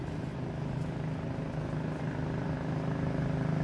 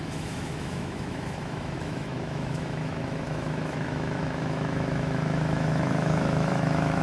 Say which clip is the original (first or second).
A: first